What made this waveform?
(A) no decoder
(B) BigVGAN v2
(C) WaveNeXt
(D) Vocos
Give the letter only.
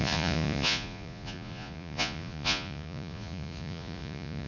D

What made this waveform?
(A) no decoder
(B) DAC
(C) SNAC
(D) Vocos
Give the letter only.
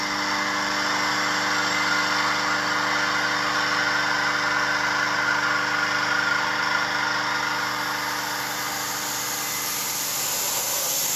A